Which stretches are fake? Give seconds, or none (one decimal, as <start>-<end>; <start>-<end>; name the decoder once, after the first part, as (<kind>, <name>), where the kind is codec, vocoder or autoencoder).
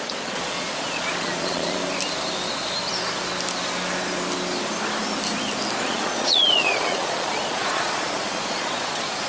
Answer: 0.0-1.8 (vocoder, Vocos); 5.8-9.3